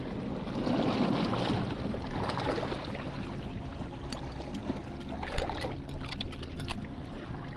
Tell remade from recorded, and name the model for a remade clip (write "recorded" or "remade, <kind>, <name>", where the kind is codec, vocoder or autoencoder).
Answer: recorded